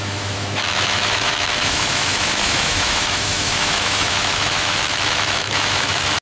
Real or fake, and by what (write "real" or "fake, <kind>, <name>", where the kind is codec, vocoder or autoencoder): fake, autoencoder, DAC-VAE